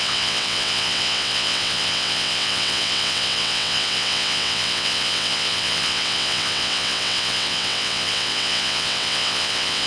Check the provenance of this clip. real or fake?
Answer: fake